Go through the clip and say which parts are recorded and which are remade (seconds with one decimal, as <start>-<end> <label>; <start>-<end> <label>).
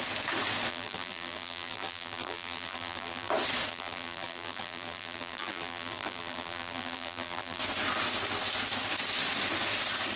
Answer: 0.0-0.7 recorded; 0.7-3.3 remade; 3.3-3.7 recorded; 3.7-7.6 remade; 7.6-10.2 recorded